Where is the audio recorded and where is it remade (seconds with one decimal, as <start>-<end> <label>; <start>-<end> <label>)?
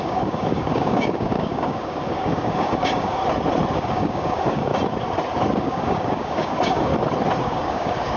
0.0-3.2 remade; 3.2-3.7 recorded; 3.7-4.7 remade; 4.7-5.6 recorded; 5.6-6.9 remade; 6.9-7.4 recorded; 7.4-8.2 remade